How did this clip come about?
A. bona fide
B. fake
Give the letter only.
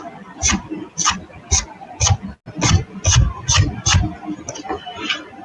A